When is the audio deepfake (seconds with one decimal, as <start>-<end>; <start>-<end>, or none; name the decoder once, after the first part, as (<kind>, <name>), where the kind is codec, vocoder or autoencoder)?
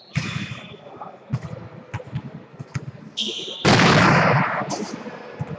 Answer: 2.5-3.4 (codec, SNAC)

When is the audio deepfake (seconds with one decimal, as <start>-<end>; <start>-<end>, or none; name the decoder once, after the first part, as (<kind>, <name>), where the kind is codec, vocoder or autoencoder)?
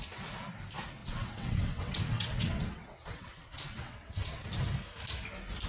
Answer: 1.0-4.4 (vocoder, WaveNeXt)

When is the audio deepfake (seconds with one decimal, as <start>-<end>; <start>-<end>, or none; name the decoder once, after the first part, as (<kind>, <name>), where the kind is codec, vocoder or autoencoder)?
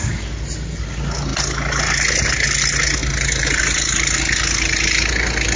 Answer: none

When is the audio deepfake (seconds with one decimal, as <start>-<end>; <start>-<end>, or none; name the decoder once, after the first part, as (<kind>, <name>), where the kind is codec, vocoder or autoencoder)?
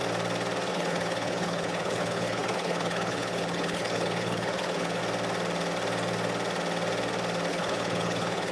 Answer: 0.7-5.0 (codec, HILCodec); 7.5-8.5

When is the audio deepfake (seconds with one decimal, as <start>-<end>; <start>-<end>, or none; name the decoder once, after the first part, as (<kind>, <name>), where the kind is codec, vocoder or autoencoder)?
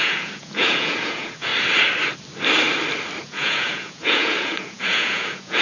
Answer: 0.0-1.5 (vocoder, Vocos); 3.2-5.6